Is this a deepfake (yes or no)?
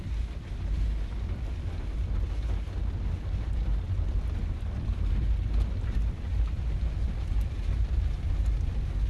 no